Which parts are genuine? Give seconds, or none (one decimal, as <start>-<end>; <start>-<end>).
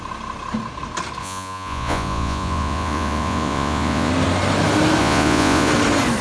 0.0-1.2; 4.1-5.0; 5.7-6.2